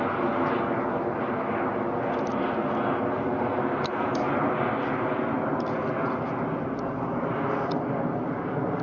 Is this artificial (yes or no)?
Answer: no